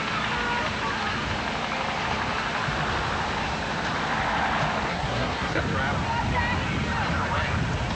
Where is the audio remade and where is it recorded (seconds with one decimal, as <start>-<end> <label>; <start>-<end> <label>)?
0.0-4.9 recorded; 4.9-5.6 remade; 5.6-7.9 recorded